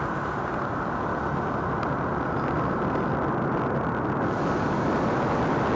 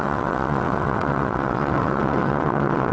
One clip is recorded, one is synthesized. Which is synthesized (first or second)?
second